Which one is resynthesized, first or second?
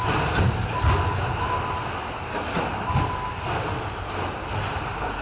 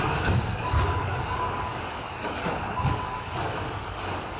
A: second